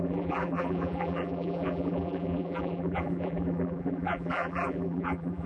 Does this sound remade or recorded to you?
remade